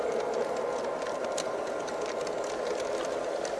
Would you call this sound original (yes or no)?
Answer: yes